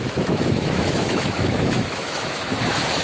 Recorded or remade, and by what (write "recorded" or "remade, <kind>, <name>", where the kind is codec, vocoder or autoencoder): remade, autoencoder, DAC-VAE